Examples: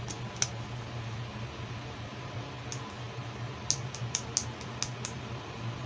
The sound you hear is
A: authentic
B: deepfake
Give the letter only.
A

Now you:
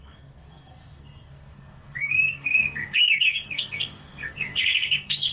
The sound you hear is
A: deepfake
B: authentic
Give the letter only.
A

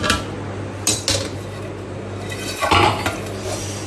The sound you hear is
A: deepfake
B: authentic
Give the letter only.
B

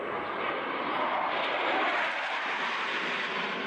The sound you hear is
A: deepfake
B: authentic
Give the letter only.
B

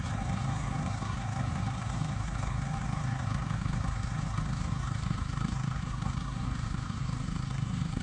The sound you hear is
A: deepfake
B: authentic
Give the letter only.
A